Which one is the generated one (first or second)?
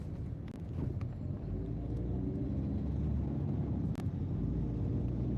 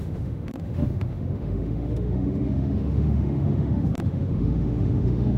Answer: second